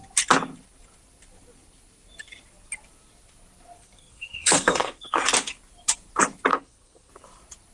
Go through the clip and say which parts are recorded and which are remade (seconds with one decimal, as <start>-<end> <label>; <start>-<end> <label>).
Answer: 0.0-3.8 recorded; 3.8-5.2 remade; 5.2-6.5 recorded; 6.5-7.1 remade; 7.1-7.7 recorded